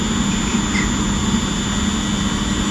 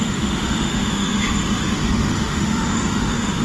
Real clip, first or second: first